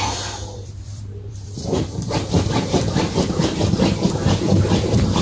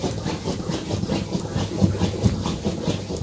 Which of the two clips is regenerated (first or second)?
first